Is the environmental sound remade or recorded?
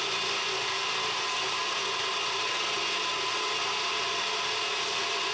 recorded